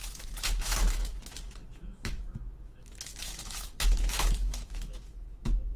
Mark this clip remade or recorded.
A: remade